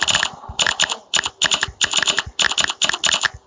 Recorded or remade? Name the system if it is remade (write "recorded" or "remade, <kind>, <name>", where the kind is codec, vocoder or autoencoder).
recorded